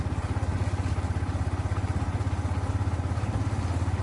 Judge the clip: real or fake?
real